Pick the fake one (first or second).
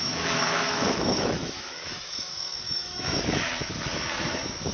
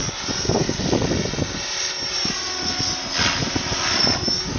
first